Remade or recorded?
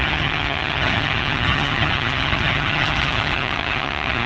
remade